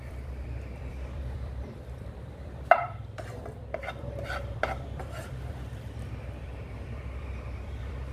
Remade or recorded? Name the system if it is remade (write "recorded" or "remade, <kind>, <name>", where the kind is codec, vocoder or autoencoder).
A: remade, vocoder, BigVGAN v2